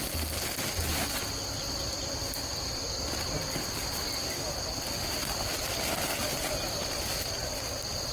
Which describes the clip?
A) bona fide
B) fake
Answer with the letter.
A